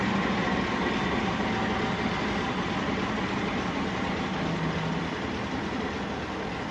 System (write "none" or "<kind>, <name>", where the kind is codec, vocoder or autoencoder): none